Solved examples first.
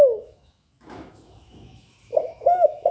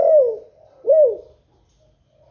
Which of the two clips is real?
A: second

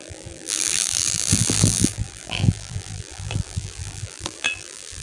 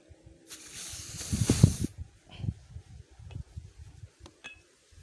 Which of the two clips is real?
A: second